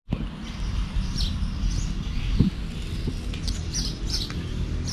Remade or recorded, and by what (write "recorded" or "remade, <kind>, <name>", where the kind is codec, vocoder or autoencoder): recorded